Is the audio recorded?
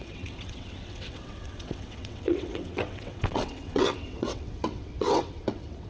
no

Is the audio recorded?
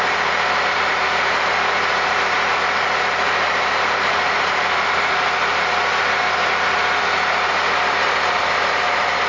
yes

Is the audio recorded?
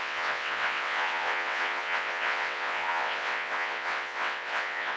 no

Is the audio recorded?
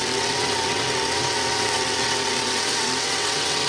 no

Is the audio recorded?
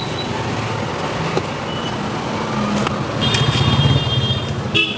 yes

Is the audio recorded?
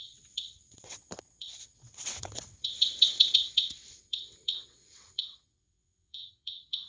no